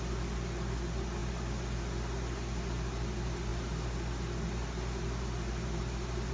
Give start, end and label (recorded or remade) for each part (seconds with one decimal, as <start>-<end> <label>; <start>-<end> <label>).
0.0-6.3 recorded